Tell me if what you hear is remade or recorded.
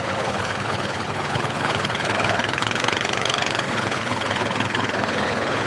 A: remade